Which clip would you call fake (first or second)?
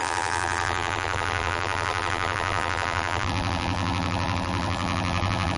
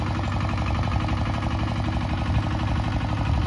first